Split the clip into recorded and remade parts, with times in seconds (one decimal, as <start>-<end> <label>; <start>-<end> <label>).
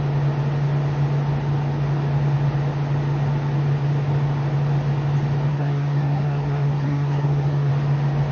0.0-5.5 recorded; 5.5-7.7 remade; 7.7-8.3 recorded